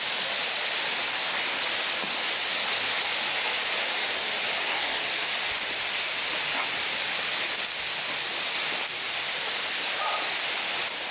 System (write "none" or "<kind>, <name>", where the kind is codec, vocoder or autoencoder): none